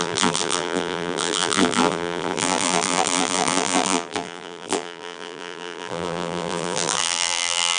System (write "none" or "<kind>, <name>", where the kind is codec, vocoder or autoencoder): vocoder, BigVGAN v2